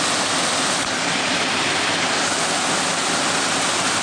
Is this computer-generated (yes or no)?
no